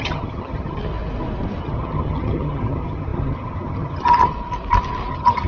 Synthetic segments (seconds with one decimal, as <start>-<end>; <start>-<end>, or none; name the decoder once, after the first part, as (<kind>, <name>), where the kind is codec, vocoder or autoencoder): 0.0-0.8 (vocoder, HiFi-GAN); 1.6-4.3; 5.1-5.5